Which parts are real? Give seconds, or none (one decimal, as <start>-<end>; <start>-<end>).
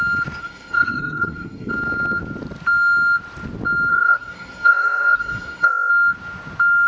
0.0-0.4; 1.7-3.9; 5.9-6.9